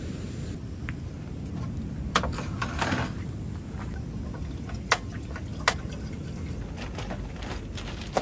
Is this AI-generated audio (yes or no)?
no